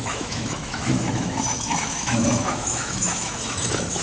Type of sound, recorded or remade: remade